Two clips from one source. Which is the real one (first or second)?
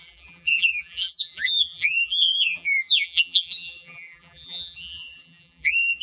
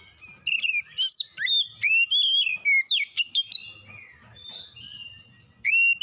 second